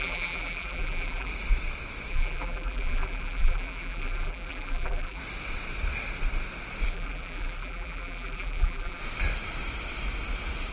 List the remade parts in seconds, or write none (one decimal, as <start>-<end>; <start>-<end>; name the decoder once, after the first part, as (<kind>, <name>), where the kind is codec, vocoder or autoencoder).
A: 0.0-1.3 (vocoder, BigVGAN v2); 2.1-5.2; 6.9-9.0